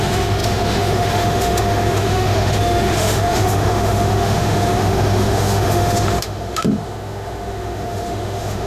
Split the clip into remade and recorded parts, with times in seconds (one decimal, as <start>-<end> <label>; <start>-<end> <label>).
0.0-8.7 remade